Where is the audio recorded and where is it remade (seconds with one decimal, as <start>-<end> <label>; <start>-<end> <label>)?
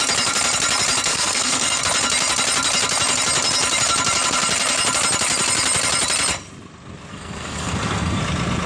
0.0-1.1 recorded; 1.1-1.8 remade; 1.8-7.1 recorded; 7.1-8.2 remade; 8.2-8.7 recorded